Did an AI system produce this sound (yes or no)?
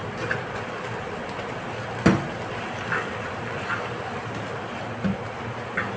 no